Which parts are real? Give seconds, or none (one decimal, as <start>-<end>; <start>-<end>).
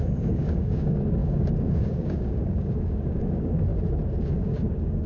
3.7-4.2